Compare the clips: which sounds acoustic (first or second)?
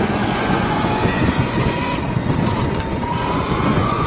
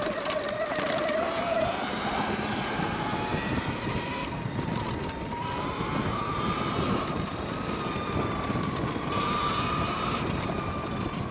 second